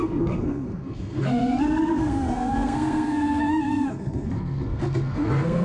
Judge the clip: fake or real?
fake